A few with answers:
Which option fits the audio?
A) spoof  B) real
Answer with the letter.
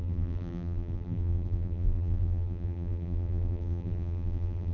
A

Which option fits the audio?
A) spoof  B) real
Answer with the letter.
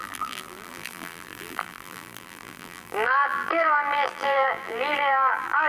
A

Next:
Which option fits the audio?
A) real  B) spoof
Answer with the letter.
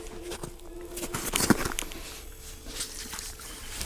A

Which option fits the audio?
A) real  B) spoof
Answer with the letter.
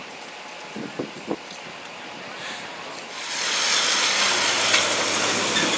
A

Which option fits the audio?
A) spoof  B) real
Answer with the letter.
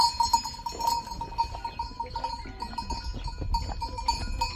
B